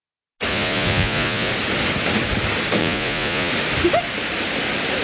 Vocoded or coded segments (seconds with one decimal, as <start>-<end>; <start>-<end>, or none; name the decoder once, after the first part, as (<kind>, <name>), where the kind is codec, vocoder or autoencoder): 0.5-1.5 (vocoder, Vocos); 2.8-3.5